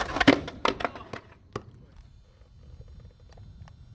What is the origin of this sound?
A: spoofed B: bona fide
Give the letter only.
B